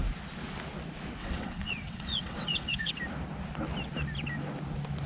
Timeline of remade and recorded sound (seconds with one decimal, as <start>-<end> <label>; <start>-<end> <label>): 0.0-1.2 recorded; 1.2-2.9 remade; 2.9-5.1 recorded